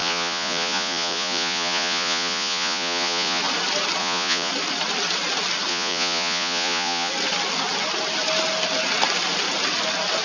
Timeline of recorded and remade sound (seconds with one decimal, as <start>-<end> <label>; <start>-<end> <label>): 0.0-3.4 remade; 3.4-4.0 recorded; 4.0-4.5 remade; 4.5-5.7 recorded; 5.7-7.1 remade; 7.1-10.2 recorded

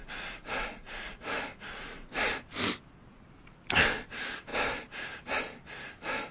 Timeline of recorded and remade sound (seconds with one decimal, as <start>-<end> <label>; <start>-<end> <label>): 0.0-1.2 remade; 1.2-1.7 recorded; 1.7-2.3 remade; 2.3-6.3 recorded

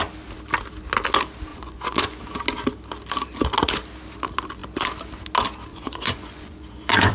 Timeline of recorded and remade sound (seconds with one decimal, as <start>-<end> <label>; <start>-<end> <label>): 0.0-1.5 recorded; 1.5-2.2 remade; 2.2-5.7 recorded; 5.7-7.1 remade

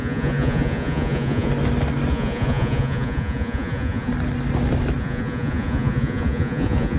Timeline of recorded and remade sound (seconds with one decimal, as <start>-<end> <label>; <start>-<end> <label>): 0.0-1.5 remade; 1.5-2.1 recorded; 2.1-4.1 remade; 4.1-5.0 recorded; 5.0-7.0 remade

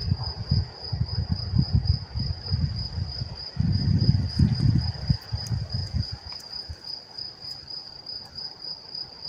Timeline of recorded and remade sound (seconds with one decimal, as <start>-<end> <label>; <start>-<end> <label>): 0.0-0.9 remade; 0.9-5.8 recorded; 5.8-6.5 remade; 6.5-9.3 recorded